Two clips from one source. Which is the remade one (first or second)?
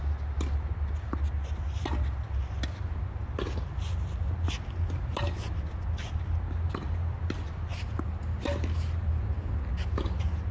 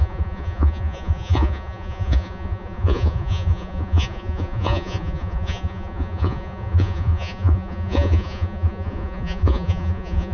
second